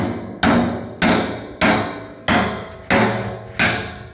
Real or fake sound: real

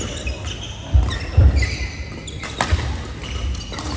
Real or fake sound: real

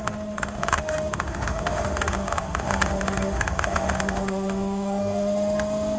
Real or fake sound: fake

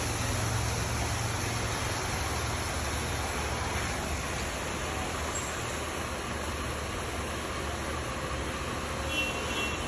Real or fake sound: real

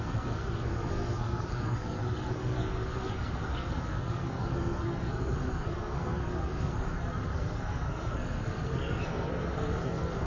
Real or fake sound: fake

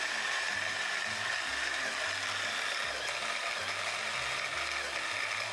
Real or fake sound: real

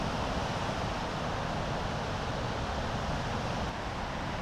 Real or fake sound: real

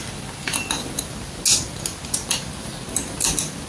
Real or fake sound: real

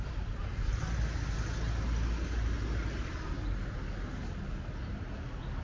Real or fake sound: real